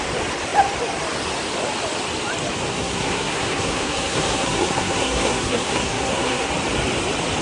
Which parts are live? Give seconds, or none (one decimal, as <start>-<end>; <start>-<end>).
0.0-2.7; 6.5-7.4